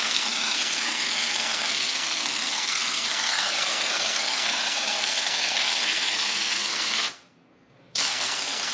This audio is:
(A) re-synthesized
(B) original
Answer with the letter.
A